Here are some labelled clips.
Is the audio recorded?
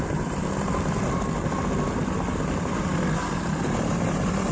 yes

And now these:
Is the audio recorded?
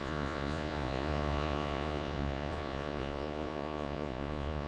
no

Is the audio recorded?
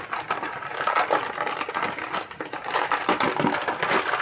yes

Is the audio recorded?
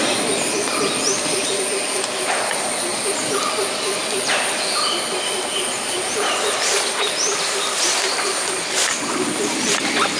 yes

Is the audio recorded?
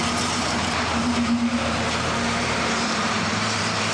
no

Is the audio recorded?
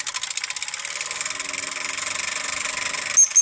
yes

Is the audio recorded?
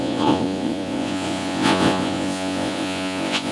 no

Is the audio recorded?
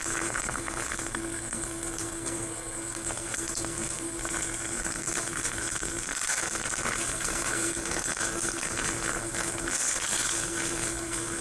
no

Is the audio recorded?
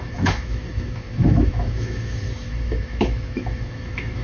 no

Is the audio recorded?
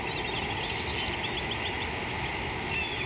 yes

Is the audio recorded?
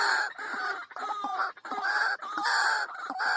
yes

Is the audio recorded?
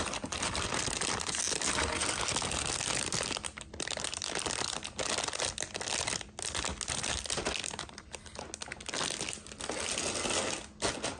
yes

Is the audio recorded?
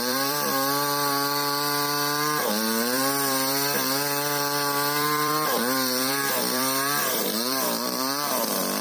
no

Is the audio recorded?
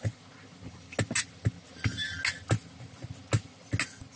yes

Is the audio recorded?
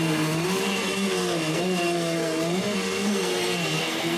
no